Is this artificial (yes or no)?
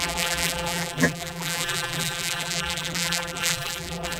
yes